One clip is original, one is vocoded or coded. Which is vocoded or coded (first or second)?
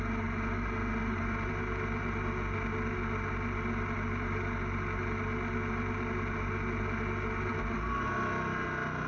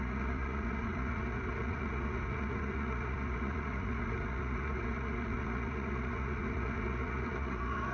second